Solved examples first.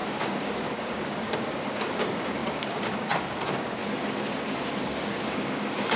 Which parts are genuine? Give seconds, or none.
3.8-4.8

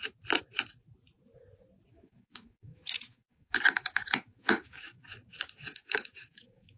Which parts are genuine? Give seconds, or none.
0.0-1.9; 5.1-5.7

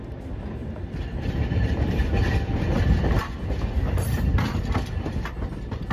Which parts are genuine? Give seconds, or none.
0.0-5.9